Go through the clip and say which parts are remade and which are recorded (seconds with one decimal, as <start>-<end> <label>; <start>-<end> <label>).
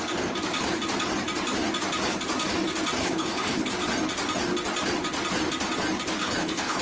0.0-3.0 recorded; 3.0-3.7 remade; 3.7-6.2 recorded; 6.2-6.8 remade